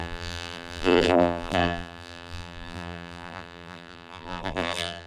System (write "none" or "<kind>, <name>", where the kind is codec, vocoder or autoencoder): vocoder, BigVGAN v2